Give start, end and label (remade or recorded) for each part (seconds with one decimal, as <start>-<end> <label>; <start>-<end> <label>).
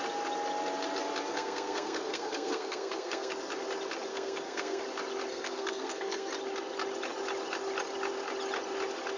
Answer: 0.0-1.3 recorded; 1.3-3.3 remade; 3.3-4.1 recorded; 4.1-4.8 remade; 4.8-5.3 recorded; 5.3-6.3 remade; 6.3-9.2 recorded